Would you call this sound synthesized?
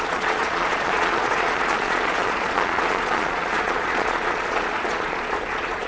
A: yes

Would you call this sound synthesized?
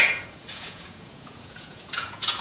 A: yes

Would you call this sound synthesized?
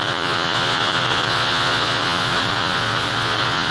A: yes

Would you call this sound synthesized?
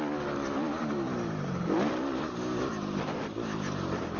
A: no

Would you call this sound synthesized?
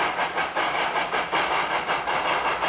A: no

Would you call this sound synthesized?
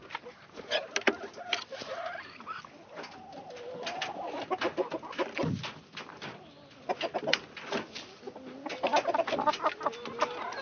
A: no